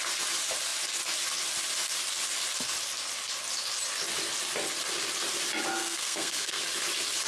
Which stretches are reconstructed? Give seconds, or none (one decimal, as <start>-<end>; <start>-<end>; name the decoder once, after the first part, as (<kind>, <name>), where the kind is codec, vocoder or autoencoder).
5.7-6.6 (codec, SNAC)